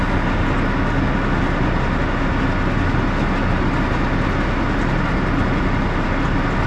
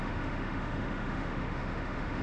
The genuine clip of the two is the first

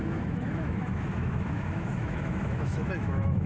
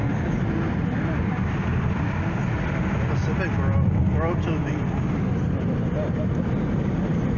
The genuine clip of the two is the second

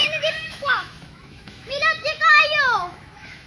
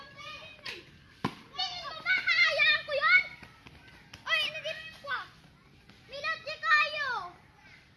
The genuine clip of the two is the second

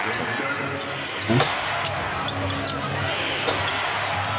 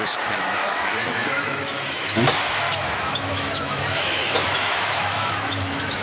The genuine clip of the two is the first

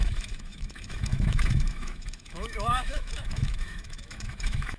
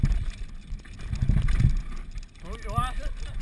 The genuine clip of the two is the second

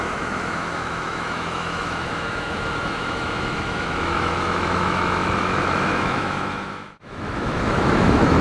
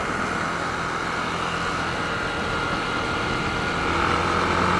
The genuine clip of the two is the second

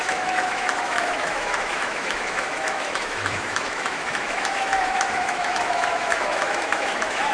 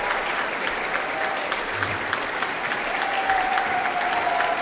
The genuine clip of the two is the second